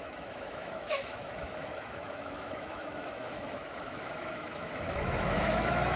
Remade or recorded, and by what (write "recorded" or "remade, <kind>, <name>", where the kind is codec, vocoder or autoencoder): remade, autoencoder, DAC-VAE